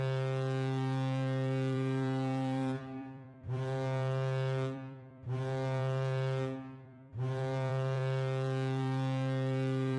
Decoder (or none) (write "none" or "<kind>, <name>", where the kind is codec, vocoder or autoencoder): vocoder, BigVGAN v2